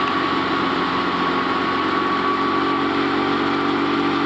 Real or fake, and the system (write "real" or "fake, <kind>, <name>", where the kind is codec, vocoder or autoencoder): real